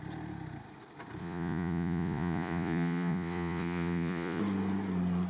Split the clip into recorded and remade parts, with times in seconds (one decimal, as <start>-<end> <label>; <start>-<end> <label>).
0.0-1.2 recorded; 1.2-4.4 remade; 4.4-5.3 recorded